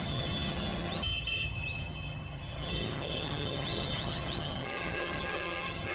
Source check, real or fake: fake